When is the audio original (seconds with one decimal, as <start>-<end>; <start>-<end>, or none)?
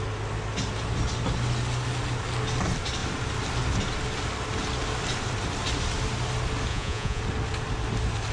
0.0-6.7; 7.2-8.3